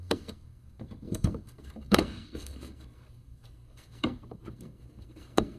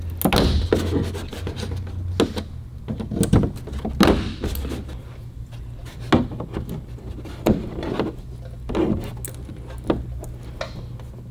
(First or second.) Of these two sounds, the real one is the second